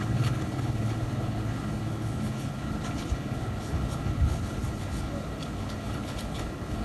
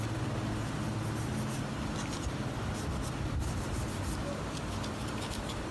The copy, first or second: first